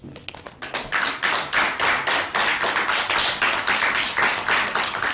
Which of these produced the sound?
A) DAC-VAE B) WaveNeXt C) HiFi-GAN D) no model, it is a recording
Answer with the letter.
D